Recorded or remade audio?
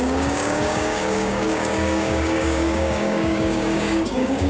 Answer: remade